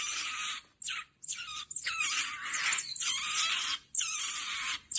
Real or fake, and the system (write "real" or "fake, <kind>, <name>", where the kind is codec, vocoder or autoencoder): fake, vocoder, BigVGAN v2